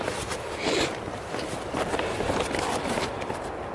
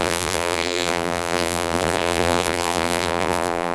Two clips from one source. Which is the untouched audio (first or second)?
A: first